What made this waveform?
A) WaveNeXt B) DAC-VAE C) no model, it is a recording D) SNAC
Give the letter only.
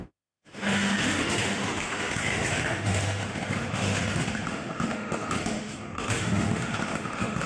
B